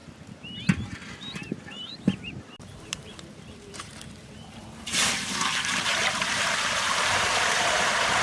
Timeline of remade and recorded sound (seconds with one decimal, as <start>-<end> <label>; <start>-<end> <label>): 0.0-1.1 recorded; 1.1-3.9 remade; 3.9-4.5 recorded; 4.5-8.2 remade